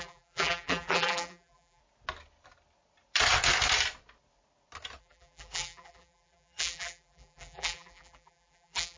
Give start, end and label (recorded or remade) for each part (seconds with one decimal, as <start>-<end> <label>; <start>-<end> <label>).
0.0-1.8 remade; 1.8-5.0 recorded; 5.0-9.0 remade